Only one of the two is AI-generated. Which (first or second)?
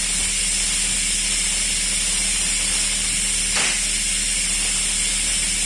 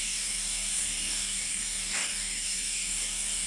second